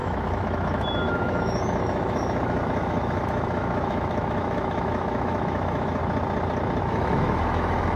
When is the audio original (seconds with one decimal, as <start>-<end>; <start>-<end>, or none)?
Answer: 6.0-6.8